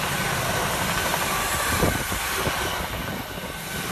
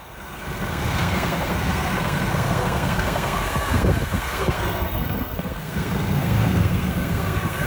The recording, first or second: first